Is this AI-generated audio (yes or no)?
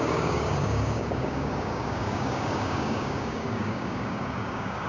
yes